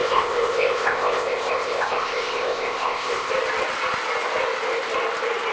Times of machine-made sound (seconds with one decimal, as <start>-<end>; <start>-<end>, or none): 0.0-3.3